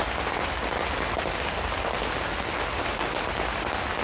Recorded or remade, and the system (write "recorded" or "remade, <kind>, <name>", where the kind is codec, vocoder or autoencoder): recorded